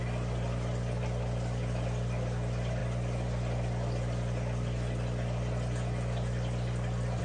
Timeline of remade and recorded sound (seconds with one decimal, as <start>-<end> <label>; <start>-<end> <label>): 0.0-7.2 recorded